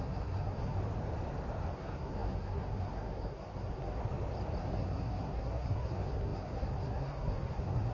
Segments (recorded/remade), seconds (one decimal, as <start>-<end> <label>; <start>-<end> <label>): 0.0-0.8 remade; 0.8-1.7 recorded; 1.7-4.0 remade; 4.0-4.6 recorded; 4.6-7.9 remade